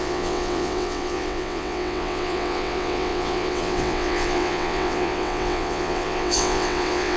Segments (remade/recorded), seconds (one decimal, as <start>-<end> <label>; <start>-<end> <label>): 0.0-7.2 remade